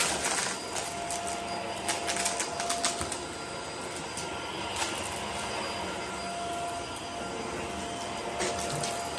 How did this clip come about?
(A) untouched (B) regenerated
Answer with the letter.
A